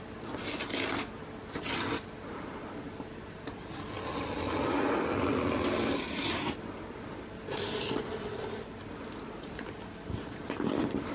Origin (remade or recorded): recorded